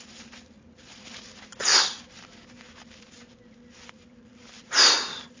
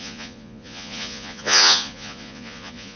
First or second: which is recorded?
first